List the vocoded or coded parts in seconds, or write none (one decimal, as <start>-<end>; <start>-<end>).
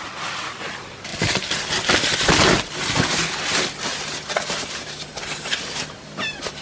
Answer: 0.0-6.6